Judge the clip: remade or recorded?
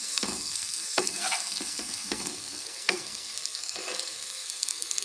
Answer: remade